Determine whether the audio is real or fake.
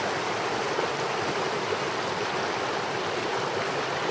real